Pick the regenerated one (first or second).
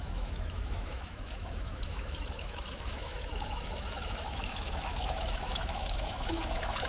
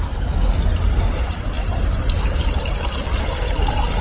first